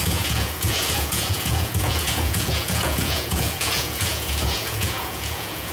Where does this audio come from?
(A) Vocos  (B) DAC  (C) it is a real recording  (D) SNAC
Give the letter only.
A